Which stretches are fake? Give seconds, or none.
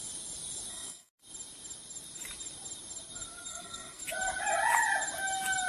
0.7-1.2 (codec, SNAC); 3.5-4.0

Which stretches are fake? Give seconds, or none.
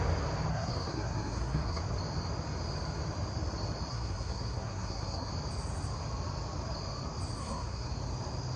0.5-1.8 (codec, SNAC); 3.9-5.3; 7.4-7.9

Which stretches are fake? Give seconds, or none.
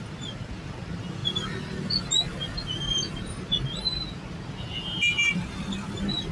none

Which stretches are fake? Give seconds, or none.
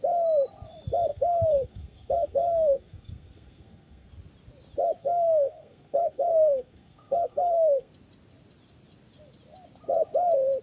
1.1-4.1 (codec, SNAC); 5.0-7.9